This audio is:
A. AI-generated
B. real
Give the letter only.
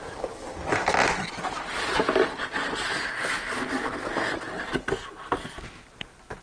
B